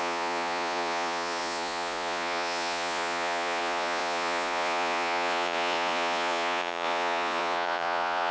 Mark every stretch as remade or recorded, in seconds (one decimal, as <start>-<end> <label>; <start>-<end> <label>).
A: 0.0-8.3 remade